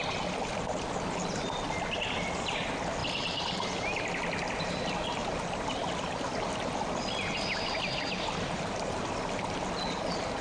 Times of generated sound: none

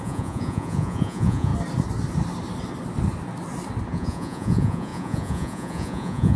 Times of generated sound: 0.0-1.5 (vocoder, Vocos); 3.9-6.4

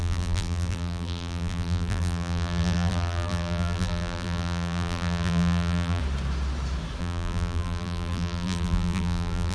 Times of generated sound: 0.0-6.0 (vocoder, BigVGAN v2); 7.0-9.5